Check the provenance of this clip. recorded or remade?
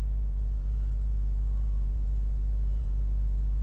remade